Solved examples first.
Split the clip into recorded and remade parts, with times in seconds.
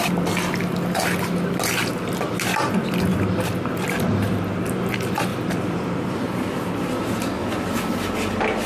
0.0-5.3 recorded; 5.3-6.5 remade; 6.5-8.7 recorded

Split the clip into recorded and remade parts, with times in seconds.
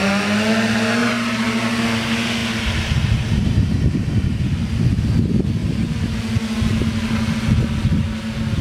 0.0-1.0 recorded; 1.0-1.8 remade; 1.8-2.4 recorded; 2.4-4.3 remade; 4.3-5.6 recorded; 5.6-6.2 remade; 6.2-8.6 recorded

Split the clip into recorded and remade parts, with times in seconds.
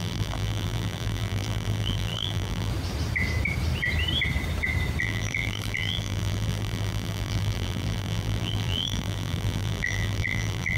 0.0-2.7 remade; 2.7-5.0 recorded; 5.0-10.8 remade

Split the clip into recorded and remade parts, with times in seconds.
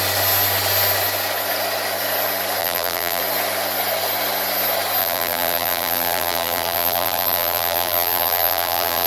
0.0-2.6 recorded; 2.6-3.2 remade; 3.2-5.0 recorded; 5.0-9.1 remade